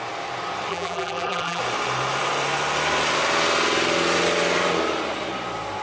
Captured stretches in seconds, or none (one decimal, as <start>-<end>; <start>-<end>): 0.0-0.7; 1.6-5.8